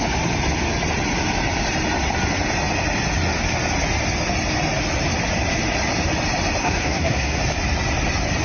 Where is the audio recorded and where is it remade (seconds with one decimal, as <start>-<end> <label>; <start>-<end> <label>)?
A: 0.0-6.6 recorded; 6.6-7.4 remade; 7.4-8.4 recorded